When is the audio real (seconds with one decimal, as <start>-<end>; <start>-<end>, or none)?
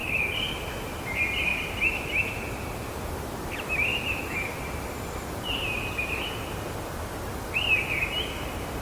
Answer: 0.0-3.9; 4.6-8.8